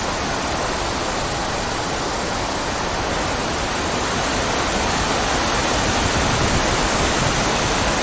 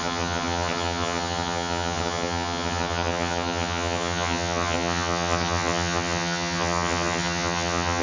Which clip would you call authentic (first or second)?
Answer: first